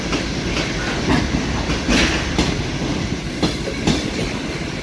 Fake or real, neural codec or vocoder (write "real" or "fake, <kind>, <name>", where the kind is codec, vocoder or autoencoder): real